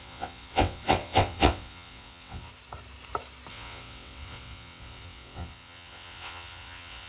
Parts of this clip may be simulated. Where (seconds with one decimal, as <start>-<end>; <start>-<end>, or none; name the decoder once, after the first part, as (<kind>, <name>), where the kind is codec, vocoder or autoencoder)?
0.0-2.5 (vocoder, WaveNeXt); 3.5-7.1